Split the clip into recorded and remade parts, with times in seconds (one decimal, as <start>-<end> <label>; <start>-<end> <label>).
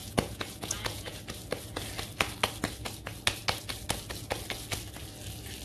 0.0-1.2 remade; 1.2-5.6 recorded